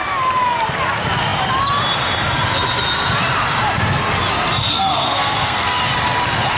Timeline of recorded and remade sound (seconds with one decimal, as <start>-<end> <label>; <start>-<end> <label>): 0.0-4.6 recorded; 4.6-5.8 remade; 5.8-6.6 recorded